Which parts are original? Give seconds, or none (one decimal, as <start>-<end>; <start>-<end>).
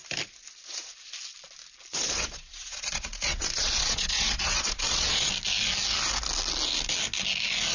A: 0.0-1.9; 5.3-7.7